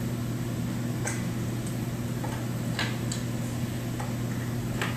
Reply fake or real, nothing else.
real